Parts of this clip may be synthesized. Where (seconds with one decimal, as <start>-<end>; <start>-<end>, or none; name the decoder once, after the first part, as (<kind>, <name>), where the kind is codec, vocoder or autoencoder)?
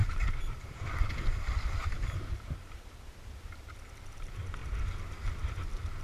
0.0-3.6 (vocoder, BigVGAN v2)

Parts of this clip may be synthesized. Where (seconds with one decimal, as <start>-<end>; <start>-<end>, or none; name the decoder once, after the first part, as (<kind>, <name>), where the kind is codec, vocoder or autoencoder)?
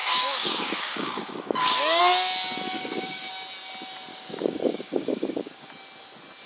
0.0-2.0 (codec, DAC); 2.7-3.3; 4.1-5.7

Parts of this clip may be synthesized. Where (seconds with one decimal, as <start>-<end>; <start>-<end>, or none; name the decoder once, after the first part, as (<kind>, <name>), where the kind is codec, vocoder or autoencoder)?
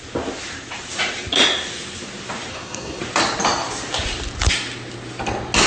2.5-3.0 (codec, SNAC)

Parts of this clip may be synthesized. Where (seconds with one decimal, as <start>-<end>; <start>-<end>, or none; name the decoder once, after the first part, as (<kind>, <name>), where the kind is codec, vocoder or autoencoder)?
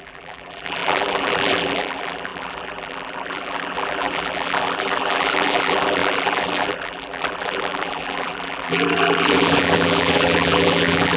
0.0-11.2 (vocoder, BigVGAN v2)